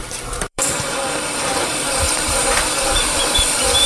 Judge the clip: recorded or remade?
remade